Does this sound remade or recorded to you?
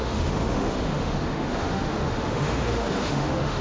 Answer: remade